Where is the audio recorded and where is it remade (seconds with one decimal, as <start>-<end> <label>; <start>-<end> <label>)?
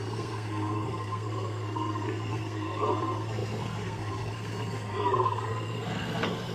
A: 0.0-6.5 remade